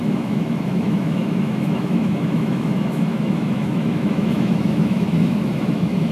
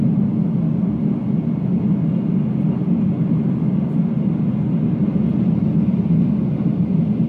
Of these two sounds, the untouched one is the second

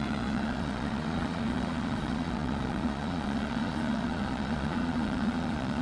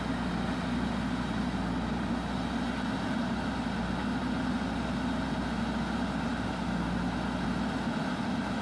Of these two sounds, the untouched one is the second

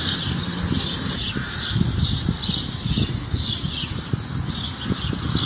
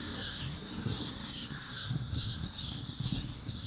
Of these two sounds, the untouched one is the first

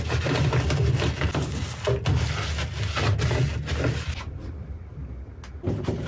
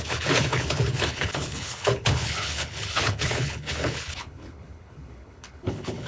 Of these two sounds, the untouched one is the first